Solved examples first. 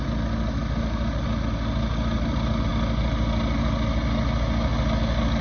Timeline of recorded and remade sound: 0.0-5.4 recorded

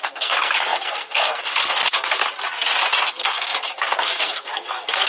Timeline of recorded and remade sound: 0.0-2.2 remade; 2.2-3.1 recorded; 3.1-5.1 remade

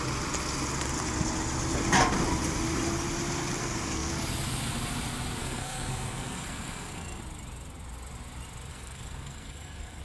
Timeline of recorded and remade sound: 0.0-3.6 recorded; 3.6-4.1 remade; 4.1-5.4 recorded; 5.4-7.2 remade; 7.2-8.7 recorded; 8.7-10.0 remade

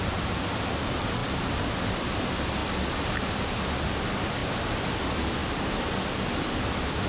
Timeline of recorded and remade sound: 0.0-2.6 remade; 2.6-3.2 recorded; 3.2-5.4 remade; 5.4-6.1 recorded; 6.1-7.1 remade

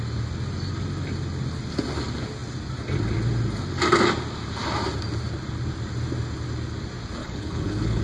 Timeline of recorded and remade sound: 0.0-7.2 recorded; 7.2-8.0 remade

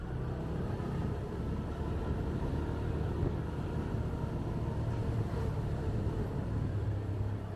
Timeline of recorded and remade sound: 0.0-7.6 recorded